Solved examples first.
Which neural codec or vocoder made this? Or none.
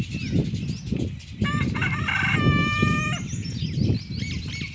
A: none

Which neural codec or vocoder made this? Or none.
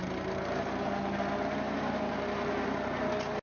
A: none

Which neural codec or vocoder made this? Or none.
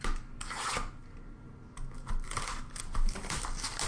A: none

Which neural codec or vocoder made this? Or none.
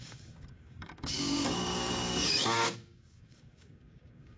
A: codec, DAC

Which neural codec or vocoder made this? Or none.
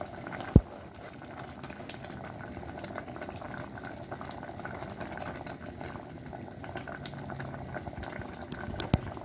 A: none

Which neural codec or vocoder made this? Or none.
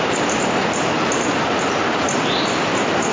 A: none